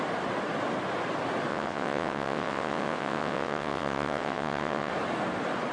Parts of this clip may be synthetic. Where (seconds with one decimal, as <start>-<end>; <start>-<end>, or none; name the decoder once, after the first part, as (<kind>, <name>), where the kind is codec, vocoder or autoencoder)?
1.5-4.9 (vocoder, WaveNeXt)